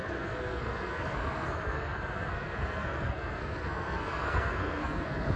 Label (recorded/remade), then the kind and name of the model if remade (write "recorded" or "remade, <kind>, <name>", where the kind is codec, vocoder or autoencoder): remade, codec, SNAC